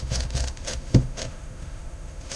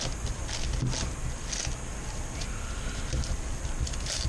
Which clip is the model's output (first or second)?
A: first